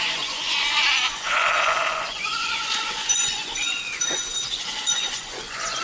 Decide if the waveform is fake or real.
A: fake